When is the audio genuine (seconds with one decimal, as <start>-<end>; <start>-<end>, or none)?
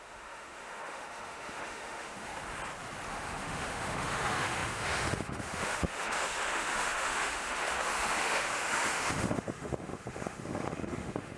2.3-3.1